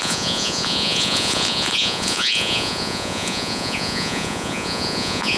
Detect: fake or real fake